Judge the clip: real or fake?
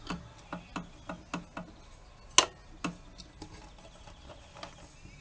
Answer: real